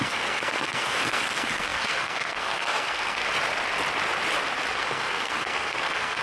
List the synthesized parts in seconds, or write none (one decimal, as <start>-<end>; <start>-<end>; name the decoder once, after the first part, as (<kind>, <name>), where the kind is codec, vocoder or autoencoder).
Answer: 0.0-3.2 (codec, SNAC); 4.7-6.2